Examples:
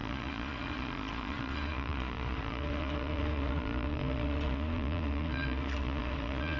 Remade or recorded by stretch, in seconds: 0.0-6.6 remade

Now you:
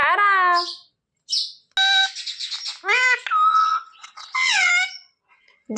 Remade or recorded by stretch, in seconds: 0.0-3.5 recorded; 3.5-4.7 remade; 4.7-5.3 recorded; 5.3-5.8 remade

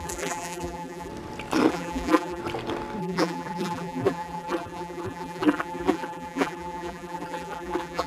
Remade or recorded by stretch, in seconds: 0.0-1.1 remade; 1.1-1.7 recorded; 1.7-2.4 remade; 2.4-3.0 recorded; 3.0-8.1 remade

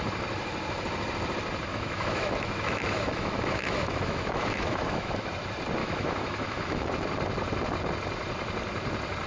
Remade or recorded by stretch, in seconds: 0.0-1.7 recorded; 1.7-5.3 remade; 5.3-5.8 recorded; 5.8-6.9 remade; 6.9-9.3 recorded

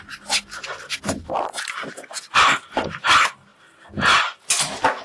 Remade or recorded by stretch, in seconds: 0.0-5.0 recorded

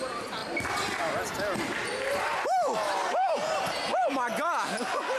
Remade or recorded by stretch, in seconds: 0.0-3.0 recorded; 3.0-4.0 remade; 4.0-5.2 recorded

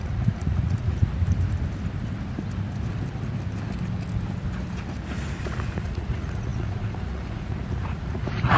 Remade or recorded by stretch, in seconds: 0.0-1.1 remade; 1.1-5.4 recorded; 5.4-8.6 remade

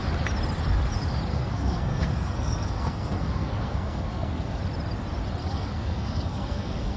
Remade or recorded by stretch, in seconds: 0.0-1.3 recorded; 1.3-4.6 remade; 4.6-5.4 recorded; 5.4-7.0 remade